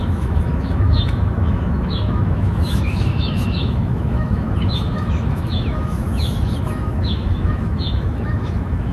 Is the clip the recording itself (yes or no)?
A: no